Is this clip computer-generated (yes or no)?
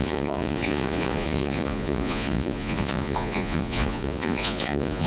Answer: yes